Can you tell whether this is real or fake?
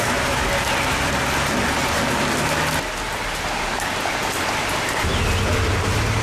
real